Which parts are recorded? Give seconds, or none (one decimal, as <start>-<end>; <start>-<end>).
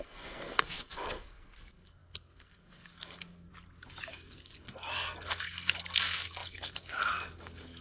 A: 3.5-4.1